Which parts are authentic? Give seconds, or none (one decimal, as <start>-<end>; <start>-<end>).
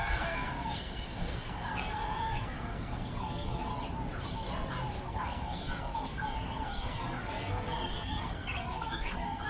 3.7-5.1